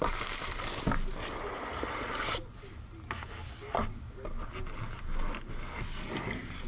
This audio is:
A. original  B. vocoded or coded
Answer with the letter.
A